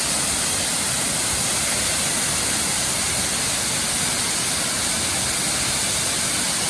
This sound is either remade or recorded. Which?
recorded